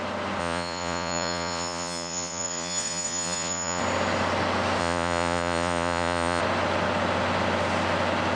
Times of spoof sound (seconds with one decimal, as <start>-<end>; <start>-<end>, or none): 0.4-3.8; 4.8-6.4